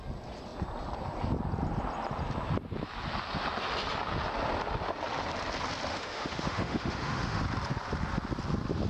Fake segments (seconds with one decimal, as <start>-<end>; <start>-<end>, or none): 5.9-7.4